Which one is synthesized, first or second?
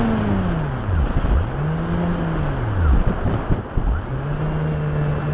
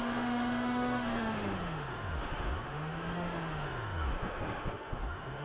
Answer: second